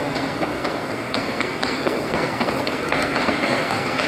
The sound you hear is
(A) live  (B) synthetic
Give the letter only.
B